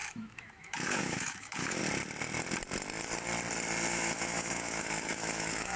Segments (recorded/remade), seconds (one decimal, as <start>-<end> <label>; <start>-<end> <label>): 0.0-1.8 remade; 1.8-3.9 recorded; 3.9-5.8 remade